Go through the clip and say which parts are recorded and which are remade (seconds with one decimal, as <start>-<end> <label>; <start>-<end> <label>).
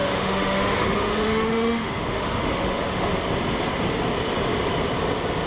0.0-3.3 remade; 3.3-5.5 recorded